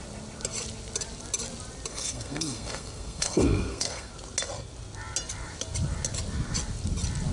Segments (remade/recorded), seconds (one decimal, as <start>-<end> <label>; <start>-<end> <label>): 0.0-1.9 recorded; 1.9-4.1 remade; 4.1-7.3 recorded